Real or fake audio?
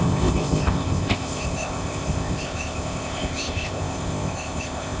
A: fake